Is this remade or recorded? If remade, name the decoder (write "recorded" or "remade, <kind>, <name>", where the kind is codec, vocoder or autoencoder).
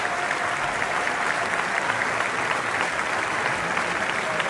recorded